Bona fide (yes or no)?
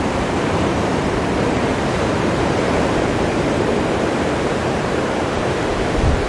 no